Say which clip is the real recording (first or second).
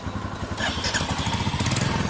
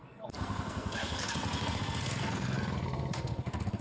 first